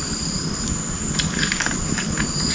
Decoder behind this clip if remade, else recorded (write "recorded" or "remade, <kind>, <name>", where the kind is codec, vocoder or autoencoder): recorded